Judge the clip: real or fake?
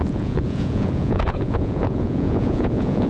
fake